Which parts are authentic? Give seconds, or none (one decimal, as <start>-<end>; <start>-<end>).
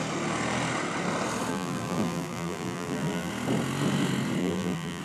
0.0-1.5; 3.3-4.4